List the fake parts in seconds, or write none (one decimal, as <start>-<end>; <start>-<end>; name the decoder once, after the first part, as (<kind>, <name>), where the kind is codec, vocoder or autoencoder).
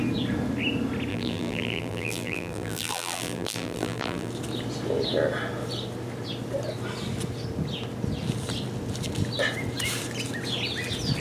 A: 1.1-4.3 (vocoder, BigVGAN v2)